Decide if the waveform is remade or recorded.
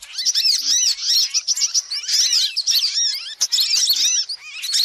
recorded